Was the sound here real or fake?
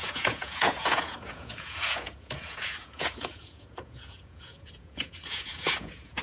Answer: fake